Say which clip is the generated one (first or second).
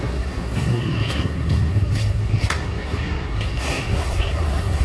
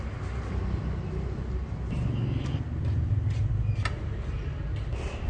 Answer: first